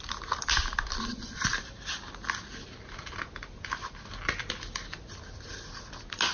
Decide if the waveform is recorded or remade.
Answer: recorded